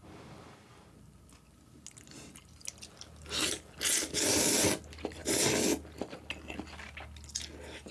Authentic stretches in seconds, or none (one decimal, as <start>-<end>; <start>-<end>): 0.0-7.9